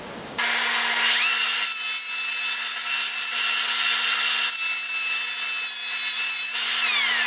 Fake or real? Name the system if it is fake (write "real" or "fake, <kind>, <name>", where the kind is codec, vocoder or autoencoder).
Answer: real